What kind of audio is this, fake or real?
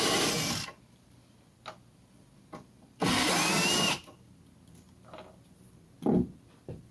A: real